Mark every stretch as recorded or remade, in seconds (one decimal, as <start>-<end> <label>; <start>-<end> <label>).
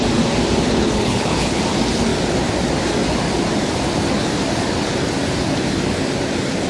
0.0-0.7 recorded; 0.7-1.6 remade; 1.6-6.7 recorded